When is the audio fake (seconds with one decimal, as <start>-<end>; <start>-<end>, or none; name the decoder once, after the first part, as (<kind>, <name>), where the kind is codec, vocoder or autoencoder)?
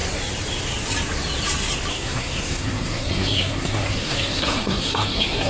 1.9-5.5 (codec, SNAC)